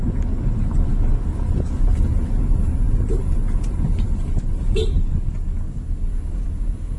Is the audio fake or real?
real